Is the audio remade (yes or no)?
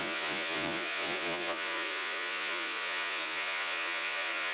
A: yes